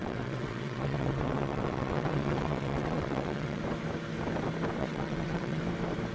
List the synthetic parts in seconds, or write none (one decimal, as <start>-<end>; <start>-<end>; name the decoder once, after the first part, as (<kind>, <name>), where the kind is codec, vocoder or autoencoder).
0.0-3.6 (vocoder, WaveNeXt); 4.8-5.6